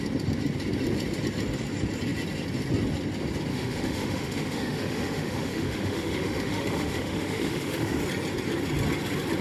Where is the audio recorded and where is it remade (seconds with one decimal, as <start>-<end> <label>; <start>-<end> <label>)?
0.0-3.5 recorded; 3.5-8.0 remade; 8.0-9.4 recorded